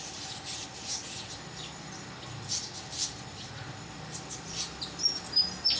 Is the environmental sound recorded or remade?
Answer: recorded